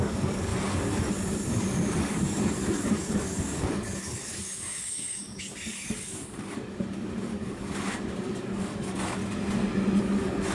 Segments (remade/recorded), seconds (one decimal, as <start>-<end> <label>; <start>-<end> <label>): 0.0-0.5 remade; 0.5-2.0 recorded; 2.0-9.2 remade; 9.2-10.0 recorded; 10.0-10.5 remade